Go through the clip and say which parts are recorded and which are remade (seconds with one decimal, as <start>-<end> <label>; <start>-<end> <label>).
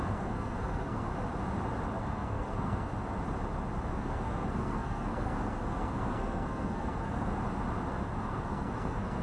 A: 0.0-1.1 remade; 1.1-2.0 recorded; 2.0-2.9 remade; 2.9-3.9 recorded; 3.9-7.3 remade; 7.3-7.9 recorded; 7.9-9.2 remade